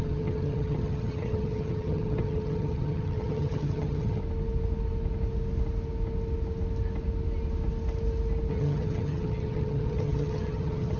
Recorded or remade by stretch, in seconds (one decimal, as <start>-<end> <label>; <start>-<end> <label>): 0.0-4.2 remade; 4.2-8.5 recorded; 8.5-11.0 remade